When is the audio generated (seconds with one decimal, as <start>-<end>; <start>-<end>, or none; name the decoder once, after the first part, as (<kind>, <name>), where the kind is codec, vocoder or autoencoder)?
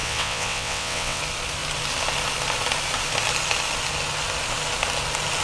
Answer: 0.0-1.2 (vocoder, WaveNeXt)